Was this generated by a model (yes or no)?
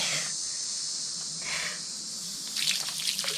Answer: no